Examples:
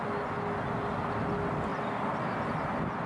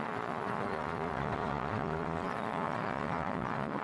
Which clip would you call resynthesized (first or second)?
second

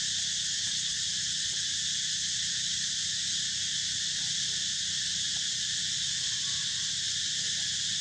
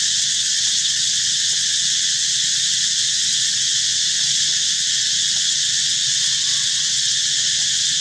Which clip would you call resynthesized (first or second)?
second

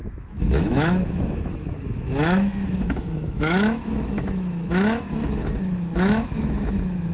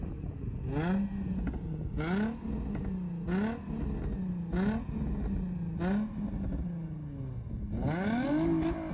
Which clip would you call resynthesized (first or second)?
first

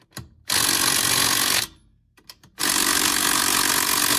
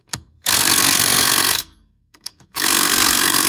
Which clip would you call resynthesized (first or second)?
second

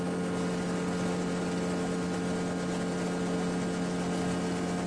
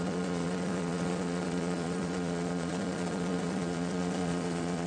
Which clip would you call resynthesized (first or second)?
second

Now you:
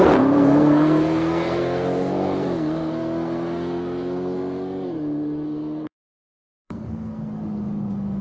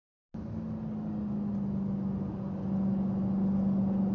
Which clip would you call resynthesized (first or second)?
first